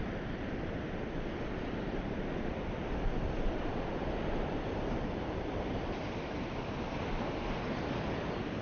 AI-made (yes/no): yes